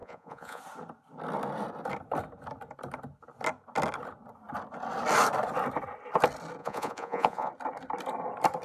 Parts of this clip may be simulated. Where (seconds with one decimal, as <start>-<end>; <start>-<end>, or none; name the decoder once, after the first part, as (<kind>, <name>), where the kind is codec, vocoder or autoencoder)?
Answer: 0.0-0.6 (vocoder, Vocos); 6.6-7.5